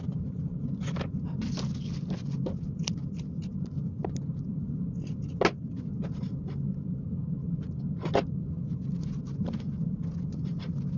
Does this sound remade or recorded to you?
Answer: recorded